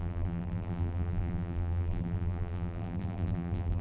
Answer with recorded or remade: remade